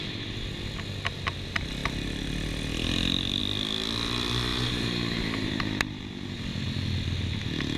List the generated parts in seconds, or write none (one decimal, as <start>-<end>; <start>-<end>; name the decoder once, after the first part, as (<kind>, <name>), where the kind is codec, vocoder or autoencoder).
4.5-6.4 (vocoder, BigVGAN v2)